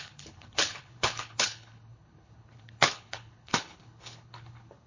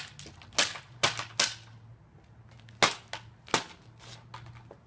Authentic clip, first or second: second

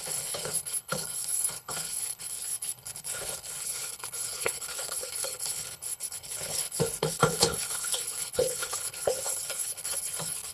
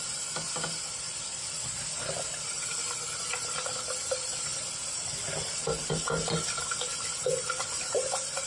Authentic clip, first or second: second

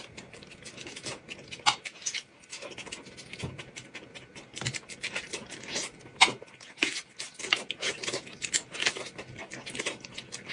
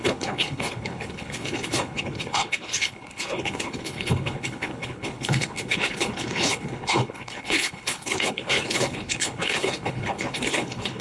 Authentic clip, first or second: first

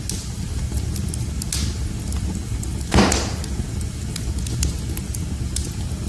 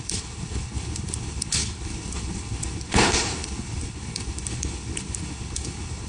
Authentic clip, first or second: first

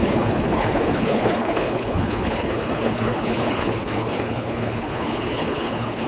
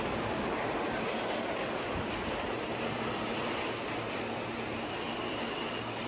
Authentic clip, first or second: second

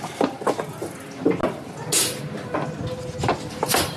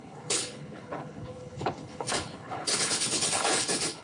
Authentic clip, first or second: first